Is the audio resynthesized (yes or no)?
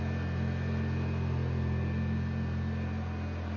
no